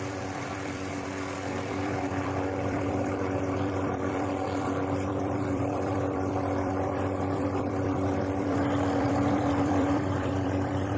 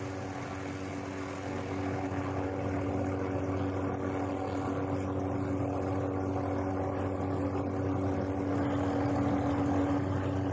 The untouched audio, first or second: second